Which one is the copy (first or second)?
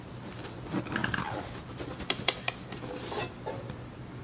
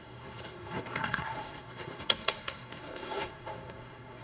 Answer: second